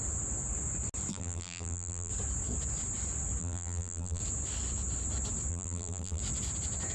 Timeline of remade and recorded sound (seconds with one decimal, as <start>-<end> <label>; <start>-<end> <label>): 0.0-1.1 recorded; 1.1-2.1 remade; 2.1-3.4 recorded; 3.4-4.2 remade; 4.2-5.5 recorded; 5.5-6.2 remade; 6.2-6.9 recorded